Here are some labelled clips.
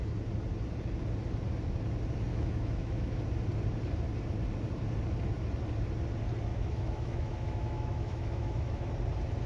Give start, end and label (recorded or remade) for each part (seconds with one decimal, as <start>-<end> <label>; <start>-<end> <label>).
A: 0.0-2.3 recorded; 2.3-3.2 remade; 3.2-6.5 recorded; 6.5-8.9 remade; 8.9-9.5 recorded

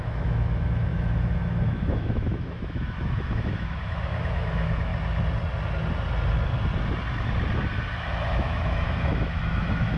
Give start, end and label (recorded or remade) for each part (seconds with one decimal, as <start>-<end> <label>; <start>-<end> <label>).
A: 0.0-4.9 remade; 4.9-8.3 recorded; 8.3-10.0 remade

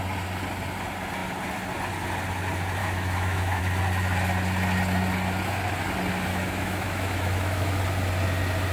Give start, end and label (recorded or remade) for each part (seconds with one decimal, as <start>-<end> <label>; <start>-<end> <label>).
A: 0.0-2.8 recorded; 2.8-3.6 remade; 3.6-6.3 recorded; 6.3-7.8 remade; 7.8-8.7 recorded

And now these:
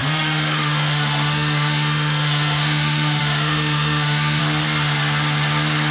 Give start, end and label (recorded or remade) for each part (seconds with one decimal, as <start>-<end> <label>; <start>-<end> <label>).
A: 0.0-4.4 remade; 4.4-5.9 recorded

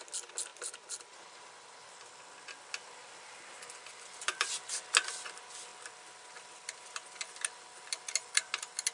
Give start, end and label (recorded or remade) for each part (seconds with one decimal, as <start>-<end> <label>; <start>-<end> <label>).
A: 0.0-8.9 recorded

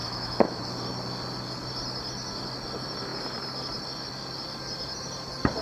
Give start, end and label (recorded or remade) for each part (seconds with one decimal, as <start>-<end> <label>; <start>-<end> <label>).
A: 0.0-0.6 remade; 0.6-5.6 recorded